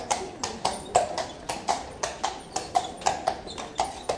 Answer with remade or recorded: recorded